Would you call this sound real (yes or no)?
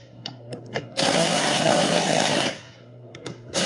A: no